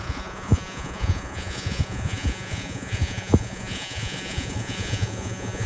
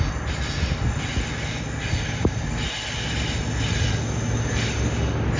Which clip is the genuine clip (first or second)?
second